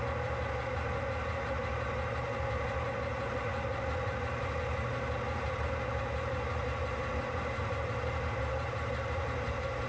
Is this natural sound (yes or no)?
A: yes